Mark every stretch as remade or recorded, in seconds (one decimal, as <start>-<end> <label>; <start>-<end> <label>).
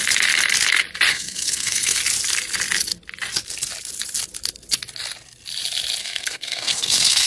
0.0-1.1 recorded; 1.1-2.0 remade; 2.0-6.0 recorded; 6.0-7.3 remade